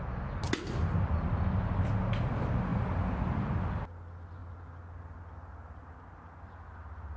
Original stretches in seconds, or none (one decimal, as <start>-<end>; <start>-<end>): 0.0-7.2

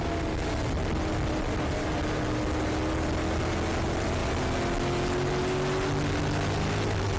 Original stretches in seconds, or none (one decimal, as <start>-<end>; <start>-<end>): 0.0-7.2

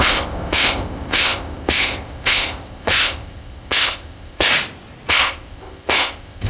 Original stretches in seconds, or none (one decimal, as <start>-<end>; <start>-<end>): 4.5-5.1

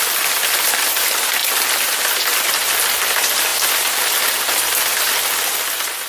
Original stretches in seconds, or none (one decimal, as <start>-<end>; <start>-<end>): 0.0-6.1

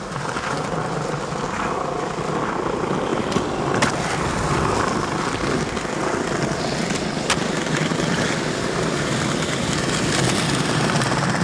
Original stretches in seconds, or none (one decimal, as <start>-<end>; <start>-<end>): 0.0-3.1; 3.9-7.9; 10.4-11.4